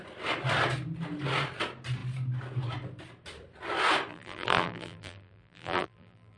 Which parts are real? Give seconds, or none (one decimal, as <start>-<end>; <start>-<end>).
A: 0.0-4.1